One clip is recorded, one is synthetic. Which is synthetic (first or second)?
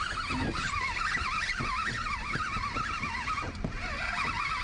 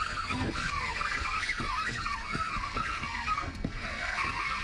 second